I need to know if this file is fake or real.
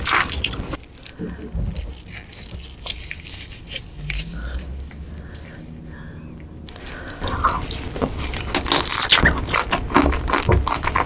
real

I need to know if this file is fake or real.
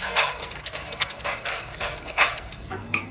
fake